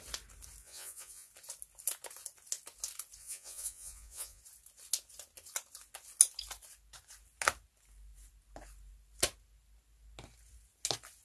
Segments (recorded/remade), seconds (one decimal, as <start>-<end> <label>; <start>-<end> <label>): 0.0-0.6 recorded; 0.6-1.3 remade; 1.3-3.2 recorded; 3.2-4.4 remade; 4.4-11.2 recorded